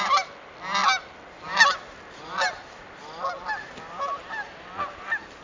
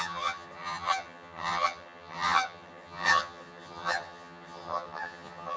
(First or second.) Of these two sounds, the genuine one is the first